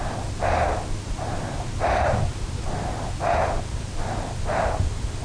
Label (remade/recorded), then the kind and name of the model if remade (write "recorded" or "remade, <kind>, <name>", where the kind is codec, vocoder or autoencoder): recorded